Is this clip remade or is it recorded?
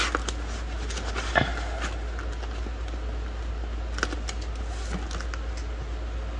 recorded